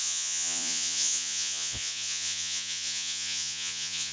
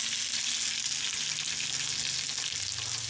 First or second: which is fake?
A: first